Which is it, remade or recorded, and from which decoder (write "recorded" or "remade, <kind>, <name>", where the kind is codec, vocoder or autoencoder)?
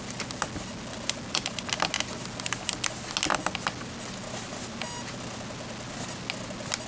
recorded